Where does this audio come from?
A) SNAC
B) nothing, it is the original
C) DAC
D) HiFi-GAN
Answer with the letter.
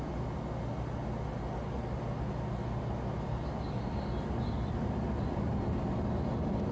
B